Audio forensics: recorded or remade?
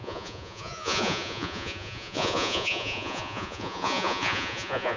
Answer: remade